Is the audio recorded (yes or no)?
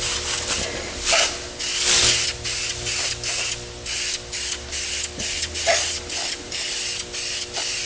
yes